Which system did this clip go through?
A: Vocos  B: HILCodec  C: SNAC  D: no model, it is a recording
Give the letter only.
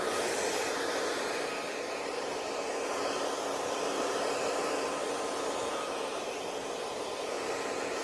D